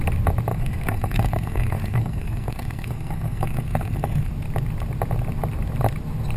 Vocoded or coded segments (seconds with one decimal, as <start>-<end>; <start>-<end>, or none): 0.5-4.3